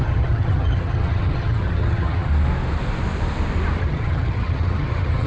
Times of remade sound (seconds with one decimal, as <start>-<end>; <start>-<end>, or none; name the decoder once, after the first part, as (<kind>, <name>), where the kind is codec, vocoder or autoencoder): 0.0-2.3 (vocoder, HiFi-GAN); 3.8-5.3